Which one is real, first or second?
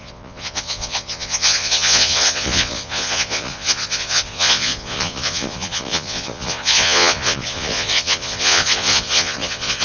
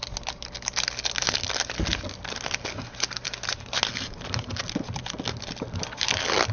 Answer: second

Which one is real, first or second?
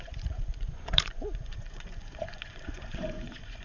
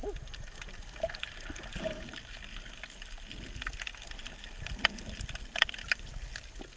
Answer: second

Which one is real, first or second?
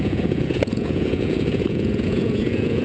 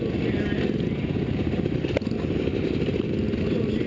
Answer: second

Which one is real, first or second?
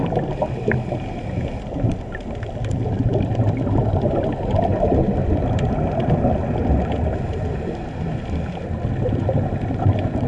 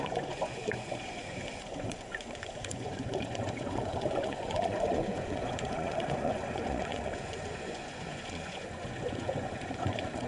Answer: first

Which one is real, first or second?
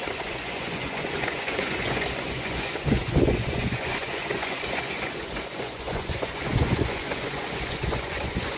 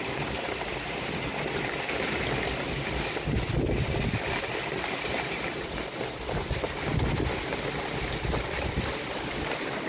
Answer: second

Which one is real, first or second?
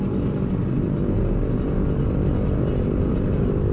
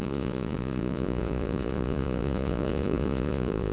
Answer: first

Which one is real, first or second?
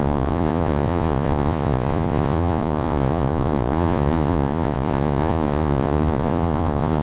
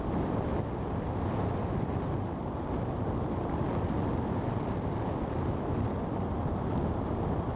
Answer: second